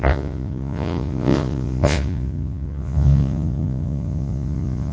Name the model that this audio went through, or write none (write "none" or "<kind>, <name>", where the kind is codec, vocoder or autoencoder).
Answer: vocoder, Vocos